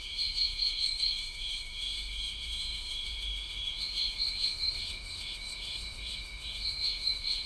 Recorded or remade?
remade